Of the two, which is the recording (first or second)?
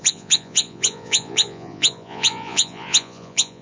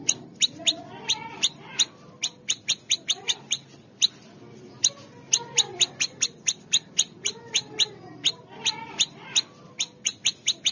second